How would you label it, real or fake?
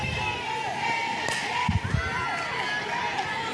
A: real